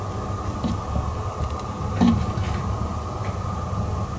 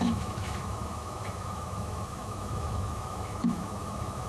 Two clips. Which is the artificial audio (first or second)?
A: second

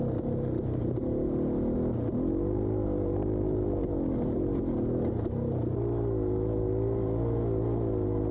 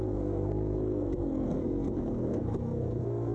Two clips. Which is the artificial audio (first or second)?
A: second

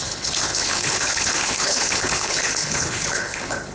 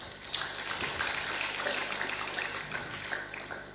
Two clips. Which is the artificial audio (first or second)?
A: first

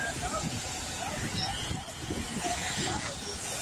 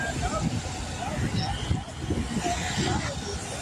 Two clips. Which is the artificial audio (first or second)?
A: first